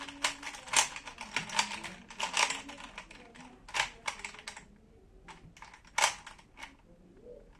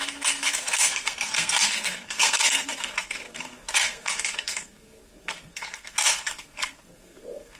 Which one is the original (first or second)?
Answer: first